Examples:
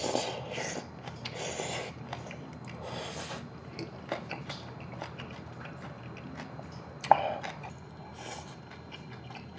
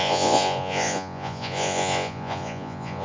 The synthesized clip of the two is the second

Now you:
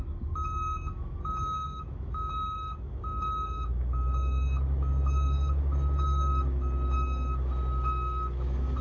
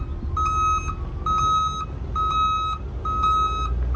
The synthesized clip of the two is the first